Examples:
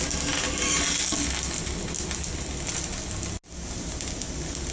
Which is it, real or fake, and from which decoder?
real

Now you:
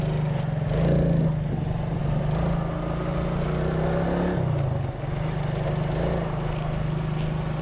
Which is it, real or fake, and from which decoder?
real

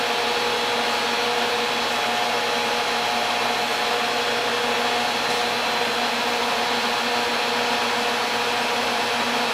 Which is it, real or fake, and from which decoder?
real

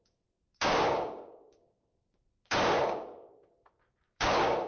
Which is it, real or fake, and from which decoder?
fake, codec, DAC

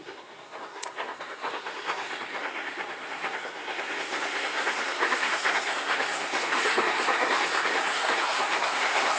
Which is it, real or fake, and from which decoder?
fake, codec, SNAC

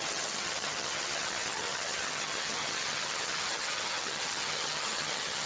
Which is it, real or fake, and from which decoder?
fake, vocoder, HiFi-GAN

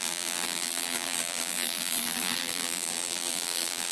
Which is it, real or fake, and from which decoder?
fake, vocoder, BigVGAN v2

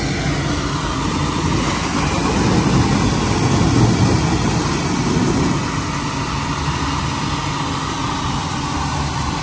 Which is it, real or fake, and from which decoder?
real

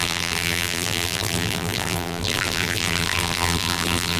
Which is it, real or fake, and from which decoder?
fake, vocoder, BigVGAN v2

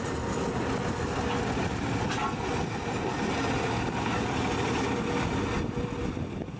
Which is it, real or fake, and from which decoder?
real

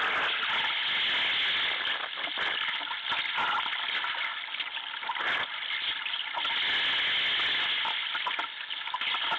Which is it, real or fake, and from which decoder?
real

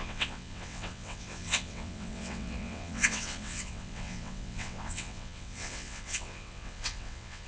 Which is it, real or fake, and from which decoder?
fake, vocoder, WaveNeXt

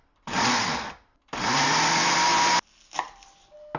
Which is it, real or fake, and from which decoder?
real